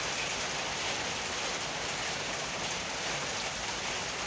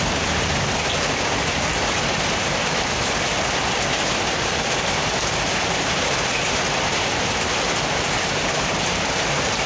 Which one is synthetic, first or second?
second